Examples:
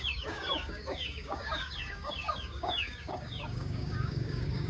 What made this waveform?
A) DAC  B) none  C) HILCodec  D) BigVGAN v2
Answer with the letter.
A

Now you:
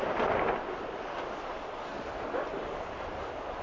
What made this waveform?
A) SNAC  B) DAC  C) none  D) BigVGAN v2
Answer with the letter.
C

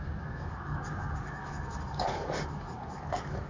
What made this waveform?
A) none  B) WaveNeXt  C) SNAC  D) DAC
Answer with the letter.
D